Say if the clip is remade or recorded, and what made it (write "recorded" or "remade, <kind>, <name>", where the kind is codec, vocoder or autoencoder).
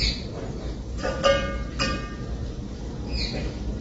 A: recorded